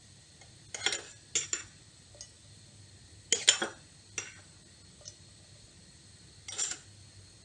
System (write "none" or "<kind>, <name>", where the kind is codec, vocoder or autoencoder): none